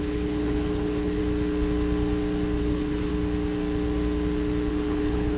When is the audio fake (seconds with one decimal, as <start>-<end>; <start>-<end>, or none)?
0.0-1.2; 2.6-3.1; 4.7-5.4